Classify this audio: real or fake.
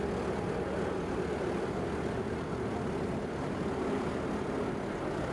real